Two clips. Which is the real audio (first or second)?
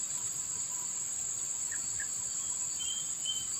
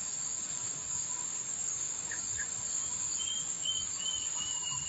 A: first